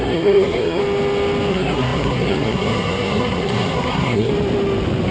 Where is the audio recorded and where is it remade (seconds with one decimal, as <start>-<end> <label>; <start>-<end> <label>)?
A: 0.0-0.8 remade; 0.8-1.5 recorded; 1.5-4.3 remade; 4.3-5.1 recorded